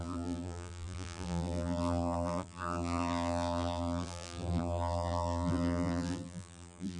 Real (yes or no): no